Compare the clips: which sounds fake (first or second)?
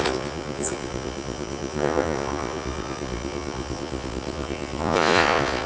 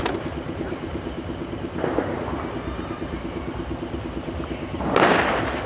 first